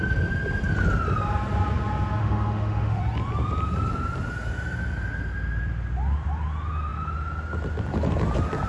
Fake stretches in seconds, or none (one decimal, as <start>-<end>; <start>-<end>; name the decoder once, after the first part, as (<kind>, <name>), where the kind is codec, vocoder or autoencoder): 2.2-3.0 (autoencoder, DAC-VAE)